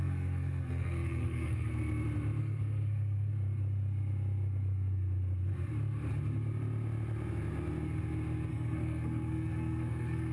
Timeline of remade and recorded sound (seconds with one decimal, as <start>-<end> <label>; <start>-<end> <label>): 0.0-1.7 remade; 1.7-2.4 recorded; 2.4-3.3 remade; 3.3-8.5 recorded; 8.5-10.3 remade